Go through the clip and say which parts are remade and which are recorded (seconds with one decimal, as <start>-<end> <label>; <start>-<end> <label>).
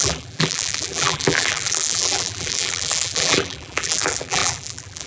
0.0-5.1 remade